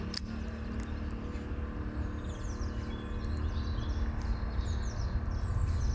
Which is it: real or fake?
real